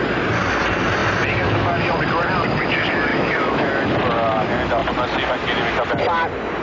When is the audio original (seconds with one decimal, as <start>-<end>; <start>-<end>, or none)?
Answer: 0.0-3.1; 3.7-6.6